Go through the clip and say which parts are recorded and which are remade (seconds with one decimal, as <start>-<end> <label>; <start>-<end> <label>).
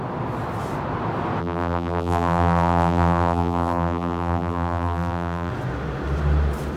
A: 0.0-1.4 recorded; 1.4-5.5 remade; 5.5-6.8 recorded